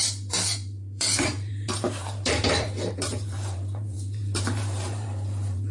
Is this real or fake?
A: fake